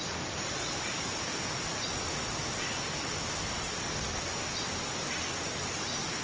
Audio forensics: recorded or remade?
recorded